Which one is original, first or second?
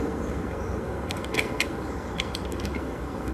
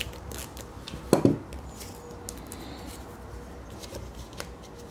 second